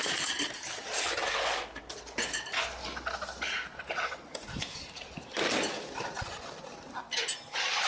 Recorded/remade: recorded